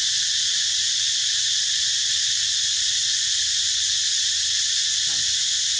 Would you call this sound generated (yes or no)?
no